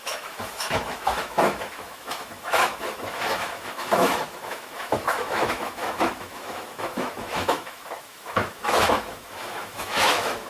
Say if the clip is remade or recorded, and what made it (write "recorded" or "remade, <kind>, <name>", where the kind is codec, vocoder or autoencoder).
remade, autoencoder, DAC-VAE